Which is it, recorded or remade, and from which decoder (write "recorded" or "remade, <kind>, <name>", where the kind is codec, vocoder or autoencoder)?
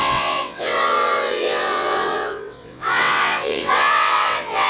remade, vocoder, WaveNeXt